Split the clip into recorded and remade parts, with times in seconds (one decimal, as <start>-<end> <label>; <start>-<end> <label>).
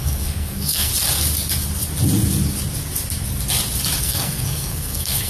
0.0-0.9 remade; 0.9-4.0 recorded; 4.0-5.3 remade